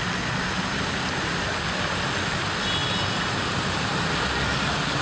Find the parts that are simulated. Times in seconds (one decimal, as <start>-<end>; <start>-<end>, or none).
0.4-1.5; 2.8-4.2